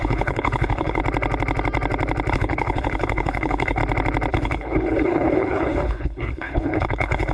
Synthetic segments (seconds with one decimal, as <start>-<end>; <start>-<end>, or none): 0.0-1.0; 2.3-3.8; 4.3-7.3